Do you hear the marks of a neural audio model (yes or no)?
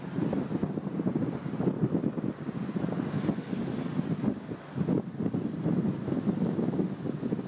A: no